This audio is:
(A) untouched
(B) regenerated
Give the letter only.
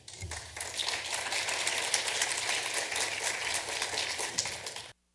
A